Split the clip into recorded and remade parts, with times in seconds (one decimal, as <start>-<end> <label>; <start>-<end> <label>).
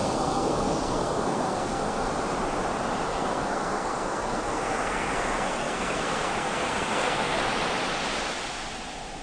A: 0.0-2.1 remade; 2.1-3.1 recorded; 3.1-7.4 remade; 7.4-9.2 recorded